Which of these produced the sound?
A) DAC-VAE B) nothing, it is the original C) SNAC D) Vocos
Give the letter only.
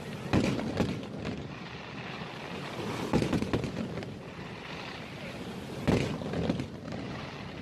B